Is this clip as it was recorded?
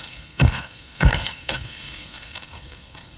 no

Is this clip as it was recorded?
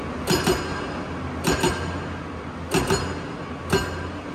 yes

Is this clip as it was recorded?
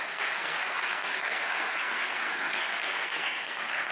no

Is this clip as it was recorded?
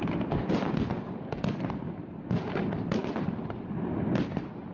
yes